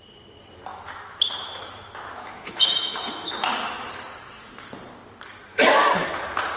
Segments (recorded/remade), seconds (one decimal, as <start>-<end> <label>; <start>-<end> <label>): 0.0-0.7 recorded; 0.7-4.5 remade; 4.5-5.5 recorded; 5.5-6.1 remade; 6.1-6.6 recorded